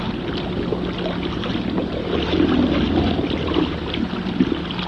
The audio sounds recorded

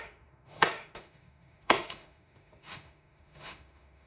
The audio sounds remade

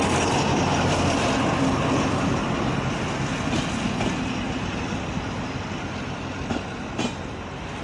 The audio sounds recorded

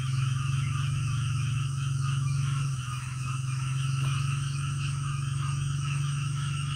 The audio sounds remade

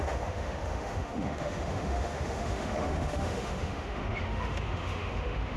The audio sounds remade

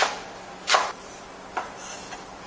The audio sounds recorded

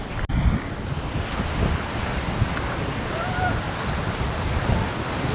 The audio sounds recorded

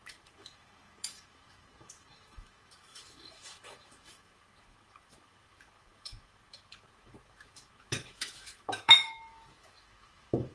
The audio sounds remade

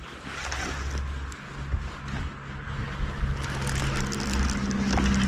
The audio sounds recorded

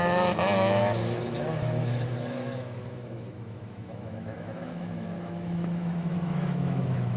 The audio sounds remade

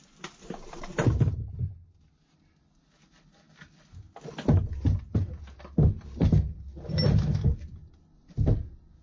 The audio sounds recorded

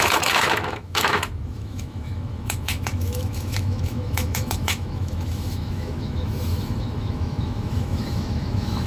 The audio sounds remade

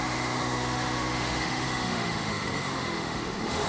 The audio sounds remade